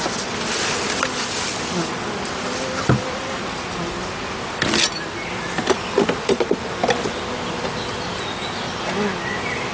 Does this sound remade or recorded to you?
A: recorded